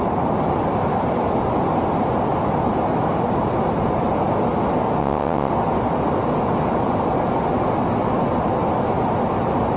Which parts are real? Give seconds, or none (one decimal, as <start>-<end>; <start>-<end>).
0.0-5.0; 5.5-9.8